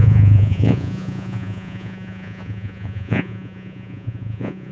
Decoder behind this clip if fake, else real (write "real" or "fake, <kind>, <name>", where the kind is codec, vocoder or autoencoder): fake, vocoder, Vocos